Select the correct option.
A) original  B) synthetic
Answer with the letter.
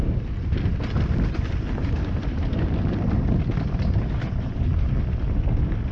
A